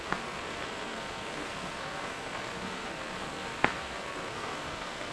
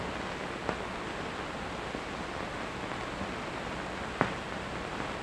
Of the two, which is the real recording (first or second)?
second